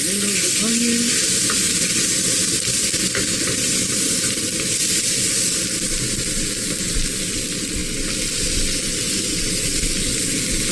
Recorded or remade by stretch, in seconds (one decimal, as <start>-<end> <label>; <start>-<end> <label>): 0.0-10.7 recorded